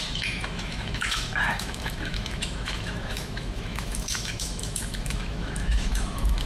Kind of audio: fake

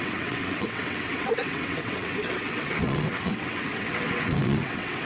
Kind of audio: fake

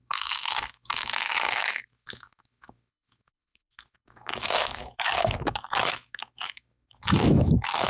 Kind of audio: fake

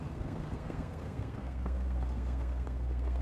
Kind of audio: fake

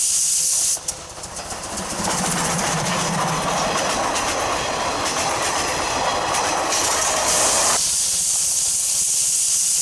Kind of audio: fake